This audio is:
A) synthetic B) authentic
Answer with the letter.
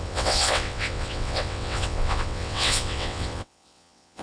A